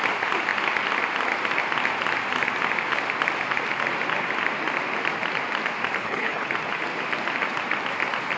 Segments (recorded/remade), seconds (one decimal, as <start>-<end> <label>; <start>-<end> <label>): 0.0-6.0 recorded; 6.0-6.5 remade; 6.5-8.4 recorded